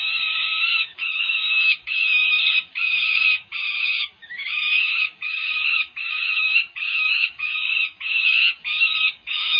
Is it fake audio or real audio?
fake